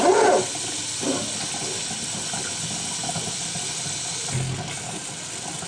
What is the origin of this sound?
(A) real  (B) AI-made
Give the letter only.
A